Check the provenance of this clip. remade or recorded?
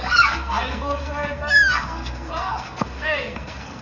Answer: remade